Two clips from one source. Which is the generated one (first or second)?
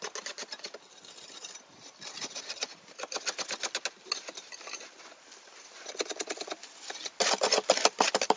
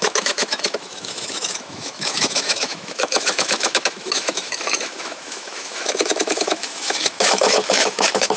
second